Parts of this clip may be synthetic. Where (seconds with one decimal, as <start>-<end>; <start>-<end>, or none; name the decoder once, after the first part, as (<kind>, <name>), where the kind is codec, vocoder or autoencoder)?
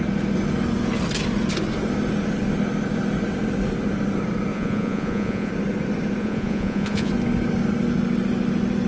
4.5-5.5 (vocoder, Vocos); 6.2-7.1